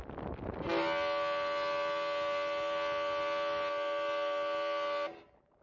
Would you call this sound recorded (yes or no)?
yes